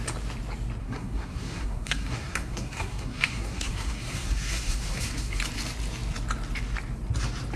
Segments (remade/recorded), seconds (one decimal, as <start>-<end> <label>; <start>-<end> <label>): 0.0-0.8 recorded; 0.8-5.4 remade; 5.4-7.6 recorded

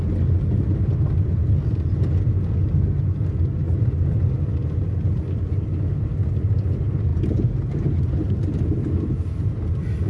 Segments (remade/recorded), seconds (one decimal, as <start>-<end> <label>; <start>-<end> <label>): 0.0-10.1 recorded

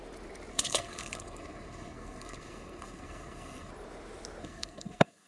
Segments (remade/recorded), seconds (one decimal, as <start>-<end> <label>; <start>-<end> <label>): 0.0-0.5 recorded; 0.5-3.7 remade; 3.7-4.4 recorded; 4.4-5.3 remade

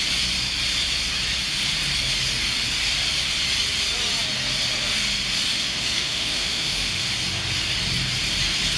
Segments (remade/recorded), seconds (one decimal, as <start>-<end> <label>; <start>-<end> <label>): 0.0-5.5 recorded; 5.5-7.1 remade; 7.1-8.8 recorded

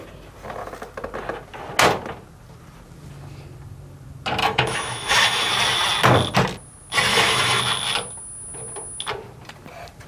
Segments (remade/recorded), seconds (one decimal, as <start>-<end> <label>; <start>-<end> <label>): 0.0-4.4 recorded; 4.4-5.5 remade; 5.5-7.1 recorded; 7.1-7.6 remade; 7.6-10.1 recorded

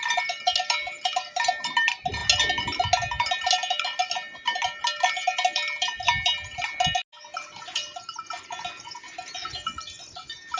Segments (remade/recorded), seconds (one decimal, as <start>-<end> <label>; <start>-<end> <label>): 0.0-10.6 recorded

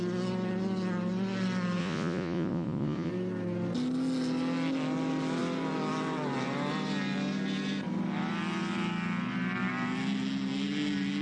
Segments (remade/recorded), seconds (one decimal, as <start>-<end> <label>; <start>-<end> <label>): 0.0-1.8 recorded; 1.8-3.1 remade; 3.1-11.2 recorded